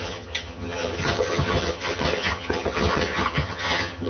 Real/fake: fake